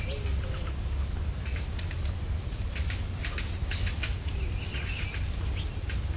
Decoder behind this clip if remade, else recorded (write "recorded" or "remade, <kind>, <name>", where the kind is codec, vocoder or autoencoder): recorded